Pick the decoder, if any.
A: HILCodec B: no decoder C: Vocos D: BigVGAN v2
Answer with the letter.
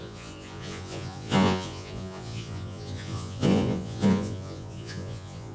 C